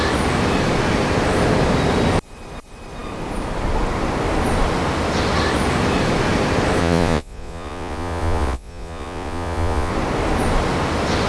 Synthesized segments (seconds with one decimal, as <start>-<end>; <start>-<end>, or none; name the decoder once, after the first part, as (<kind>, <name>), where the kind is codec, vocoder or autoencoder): 6.8-9.9 (vocoder, Vocos)